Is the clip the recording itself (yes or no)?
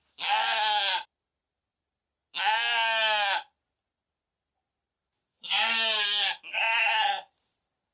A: yes